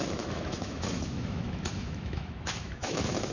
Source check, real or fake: fake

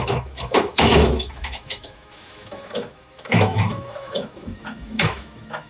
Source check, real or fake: fake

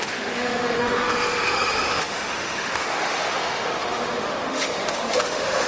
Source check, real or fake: fake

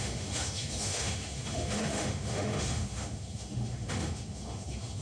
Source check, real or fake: fake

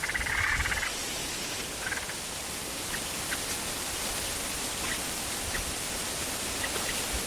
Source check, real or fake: real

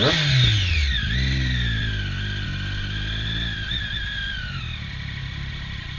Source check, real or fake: real